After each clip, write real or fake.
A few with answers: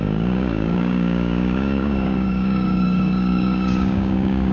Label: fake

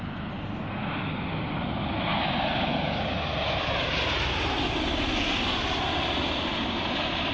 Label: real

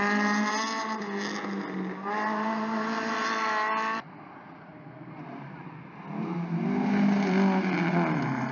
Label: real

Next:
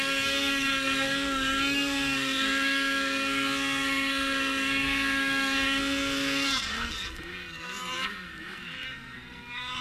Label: fake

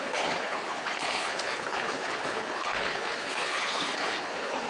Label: fake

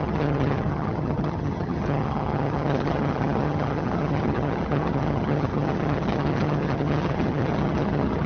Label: fake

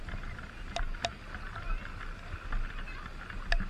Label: real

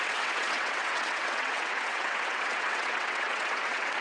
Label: fake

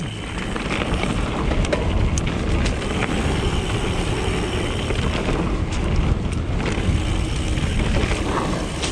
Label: real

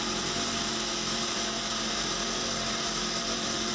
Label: fake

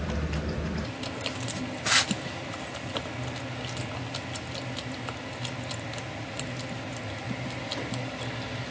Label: real